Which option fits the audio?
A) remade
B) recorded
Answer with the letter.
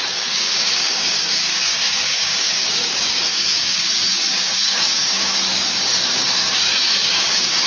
A